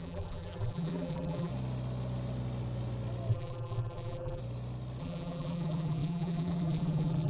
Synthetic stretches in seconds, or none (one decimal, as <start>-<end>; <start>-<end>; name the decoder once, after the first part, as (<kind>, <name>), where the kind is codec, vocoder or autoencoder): 0.0-1.5 (vocoder, BigVGAN v2); 3.3-4.4; 5.0-7.3